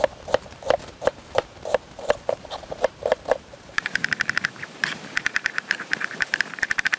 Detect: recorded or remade remade